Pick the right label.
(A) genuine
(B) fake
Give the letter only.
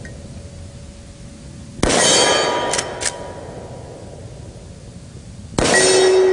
A